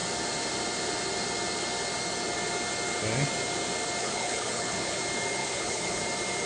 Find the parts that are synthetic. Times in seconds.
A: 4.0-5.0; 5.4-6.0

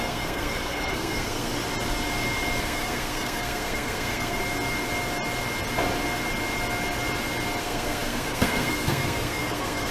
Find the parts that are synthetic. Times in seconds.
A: 0.0-1.5; 2.6-4.4; 7.6-9.9

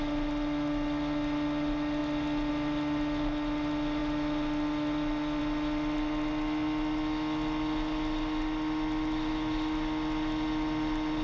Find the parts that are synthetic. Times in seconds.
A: none

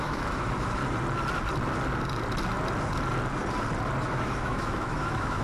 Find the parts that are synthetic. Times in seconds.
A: 0.0-0.8; 4.0-5.4

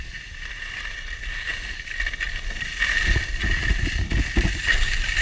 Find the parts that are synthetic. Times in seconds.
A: none

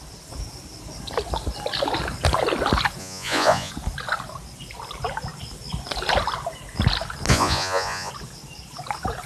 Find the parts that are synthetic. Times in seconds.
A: 3.0-3.7; 7.3-8.1

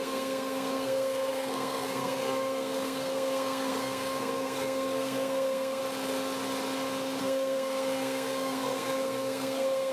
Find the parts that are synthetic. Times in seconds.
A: 0.0-5.8; 7.2-9.9